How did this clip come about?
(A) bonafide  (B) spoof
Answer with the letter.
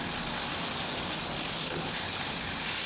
A